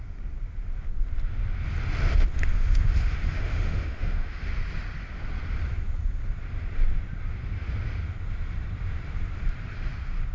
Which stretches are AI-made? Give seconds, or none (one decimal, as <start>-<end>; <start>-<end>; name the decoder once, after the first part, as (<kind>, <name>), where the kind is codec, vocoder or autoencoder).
2.5-4.5 (autoencoder, DAC-VAE)